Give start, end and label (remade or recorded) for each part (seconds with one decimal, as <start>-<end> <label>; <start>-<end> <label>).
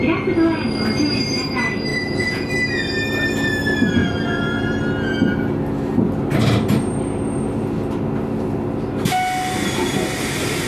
0.0-1.9 recorded; 1.9-2.5 remade; 2.5-4.0 recorded; 4.0-4.8 remade; 4.8-10.7 recorded